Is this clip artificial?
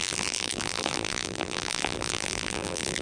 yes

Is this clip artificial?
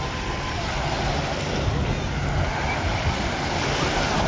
no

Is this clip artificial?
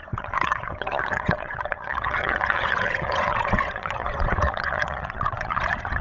yes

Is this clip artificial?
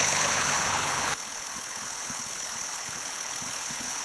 yes